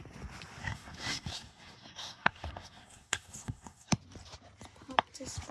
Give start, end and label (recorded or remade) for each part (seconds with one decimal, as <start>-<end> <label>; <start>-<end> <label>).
0.0-0.6 recorded; 0.6-3.9 remade; 3.9-5.5 recorded